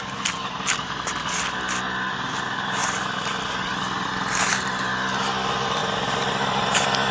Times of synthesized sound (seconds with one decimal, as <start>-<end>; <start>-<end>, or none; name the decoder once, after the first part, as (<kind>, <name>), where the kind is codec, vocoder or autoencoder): 5.8-7.1 (vocoder, BigVGAN v2)